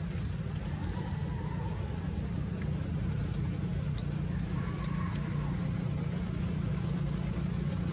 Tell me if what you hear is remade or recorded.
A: recorded